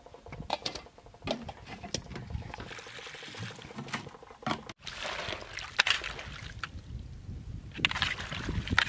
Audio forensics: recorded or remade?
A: recorded